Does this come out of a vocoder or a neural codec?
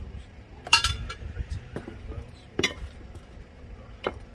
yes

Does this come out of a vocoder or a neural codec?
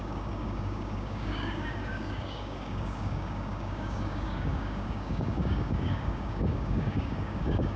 yes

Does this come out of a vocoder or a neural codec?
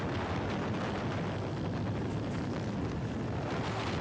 no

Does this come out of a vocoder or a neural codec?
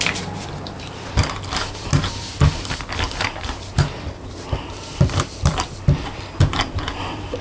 yes